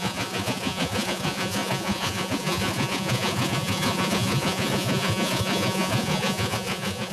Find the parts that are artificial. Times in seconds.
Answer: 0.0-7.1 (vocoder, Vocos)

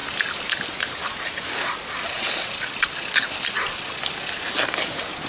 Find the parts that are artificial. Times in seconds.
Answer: none

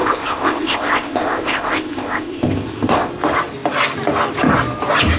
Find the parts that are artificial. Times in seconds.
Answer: 0.0-3.1 (codec, ZipCodec)

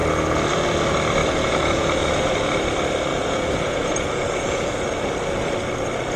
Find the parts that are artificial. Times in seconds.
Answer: 1.2-1.9 (vocoder, Vocos); 3.1-4.7